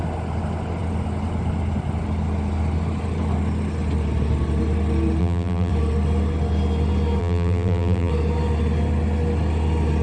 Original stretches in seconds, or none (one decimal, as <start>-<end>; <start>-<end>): 0.0-5.2; 5.7-7.2; 8.1-10.0